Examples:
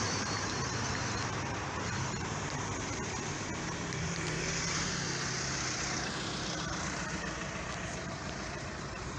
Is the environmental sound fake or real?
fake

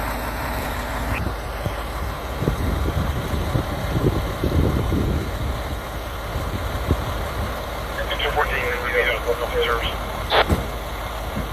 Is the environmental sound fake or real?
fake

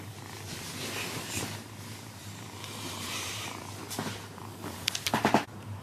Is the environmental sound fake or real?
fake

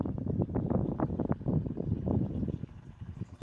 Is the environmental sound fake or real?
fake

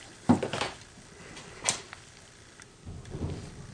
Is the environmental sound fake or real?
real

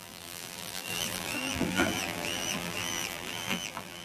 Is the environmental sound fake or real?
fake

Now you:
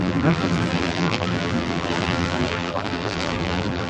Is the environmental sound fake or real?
fake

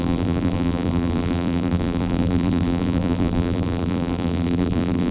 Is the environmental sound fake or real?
fake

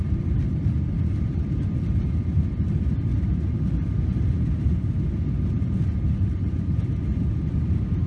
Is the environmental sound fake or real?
fake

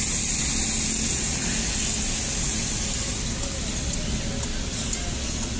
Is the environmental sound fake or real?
real